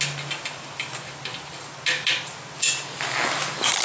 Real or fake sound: real